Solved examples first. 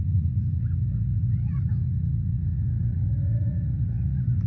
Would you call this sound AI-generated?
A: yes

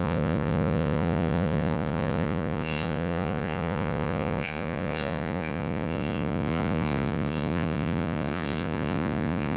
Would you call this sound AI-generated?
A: yes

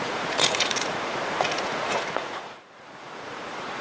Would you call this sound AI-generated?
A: yes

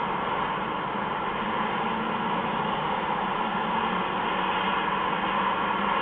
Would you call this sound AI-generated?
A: no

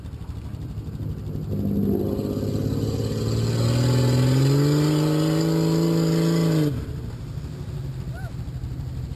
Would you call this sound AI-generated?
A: no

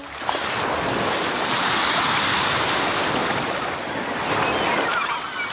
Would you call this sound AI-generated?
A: no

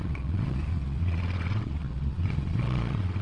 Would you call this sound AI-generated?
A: yes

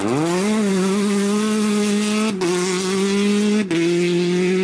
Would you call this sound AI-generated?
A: no